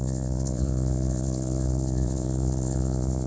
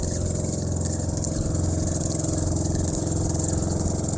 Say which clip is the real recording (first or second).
second